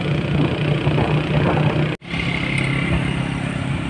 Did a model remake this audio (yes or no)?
no